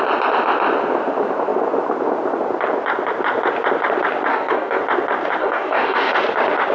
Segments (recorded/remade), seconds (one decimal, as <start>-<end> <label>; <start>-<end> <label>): 0.0-4.3 recorded; 4.3-4.8 remade; 4.8-5.4 recorded; 5.4-6.1 remade; 6.1-6.7 recorded